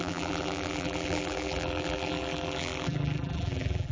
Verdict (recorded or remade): remade